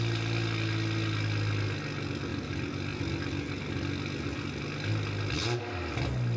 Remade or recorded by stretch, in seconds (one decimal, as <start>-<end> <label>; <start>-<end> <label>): 0.0-6.4 recorded